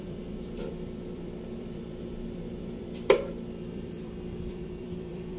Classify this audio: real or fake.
fake